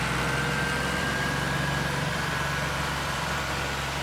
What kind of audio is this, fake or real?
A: fake